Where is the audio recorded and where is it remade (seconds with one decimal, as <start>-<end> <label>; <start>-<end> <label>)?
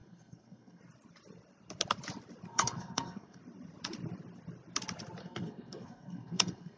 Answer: 0.0-0.8 remade; 0.8-2.5 recorded; 2.5-3.4 remade; 3.4-5.2 recorded; 5.2-6.8 remade